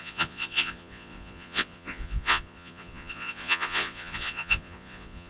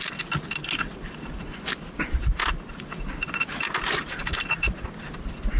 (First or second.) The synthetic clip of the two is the first